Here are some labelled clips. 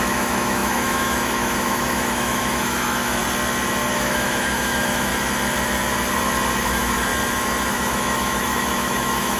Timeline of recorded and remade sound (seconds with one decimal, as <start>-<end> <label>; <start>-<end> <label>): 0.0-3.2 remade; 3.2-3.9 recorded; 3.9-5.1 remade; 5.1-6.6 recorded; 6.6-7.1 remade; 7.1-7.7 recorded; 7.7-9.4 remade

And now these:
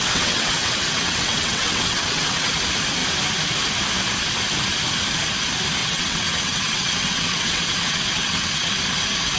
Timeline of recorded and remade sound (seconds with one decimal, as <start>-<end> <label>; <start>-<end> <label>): 0.0-2.5 remade; 2.5-5.8 recorded; 5.8-8.7 remade; 8.7-9.4 recorded

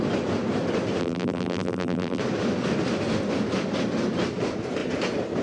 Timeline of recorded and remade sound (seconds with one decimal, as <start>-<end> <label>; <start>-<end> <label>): 0.0-1.0 recorded; 1.0-2.2 remade; 2.2-5.4 recorded

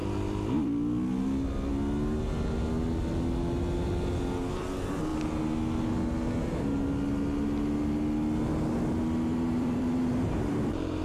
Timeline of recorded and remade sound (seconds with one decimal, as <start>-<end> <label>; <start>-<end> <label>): 0.0-9.3 recorded; 9.3-11.0 remade

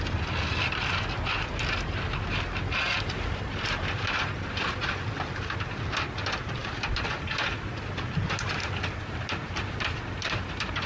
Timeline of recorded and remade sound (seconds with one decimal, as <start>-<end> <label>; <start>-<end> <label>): 0.0-10.9 recorded

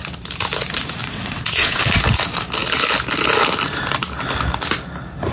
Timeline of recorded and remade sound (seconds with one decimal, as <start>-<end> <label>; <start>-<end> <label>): 0.0-1.0 recorded; 1.0-1.8 remade; 1.8-5.3 recorded